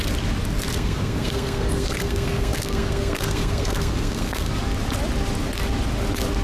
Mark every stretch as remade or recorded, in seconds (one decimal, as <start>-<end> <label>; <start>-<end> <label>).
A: 0.0-0.7 recorded; 0.7-4.5 remade; 4.5-6.4 recorded